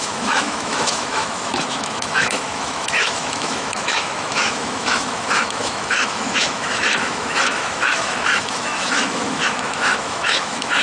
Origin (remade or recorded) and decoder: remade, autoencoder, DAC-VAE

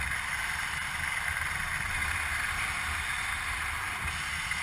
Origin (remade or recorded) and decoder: recorded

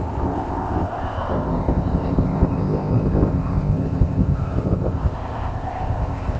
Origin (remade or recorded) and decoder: remade, codec, ZipCodec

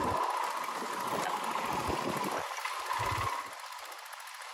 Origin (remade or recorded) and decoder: recorded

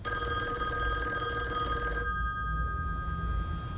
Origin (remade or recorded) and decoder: recorded